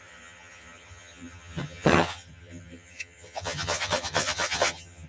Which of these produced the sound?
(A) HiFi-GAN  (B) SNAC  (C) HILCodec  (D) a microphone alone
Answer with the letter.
A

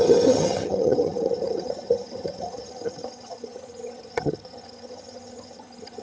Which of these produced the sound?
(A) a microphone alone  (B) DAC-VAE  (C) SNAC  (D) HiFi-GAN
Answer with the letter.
D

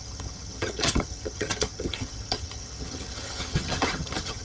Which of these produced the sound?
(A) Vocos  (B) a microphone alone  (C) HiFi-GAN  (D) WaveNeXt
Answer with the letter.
C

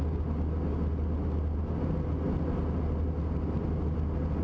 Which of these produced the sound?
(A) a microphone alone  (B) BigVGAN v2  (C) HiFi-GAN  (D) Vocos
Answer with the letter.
A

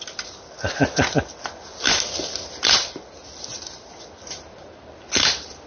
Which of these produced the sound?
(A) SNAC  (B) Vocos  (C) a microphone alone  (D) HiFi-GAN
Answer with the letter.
C